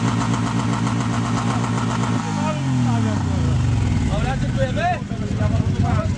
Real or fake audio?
real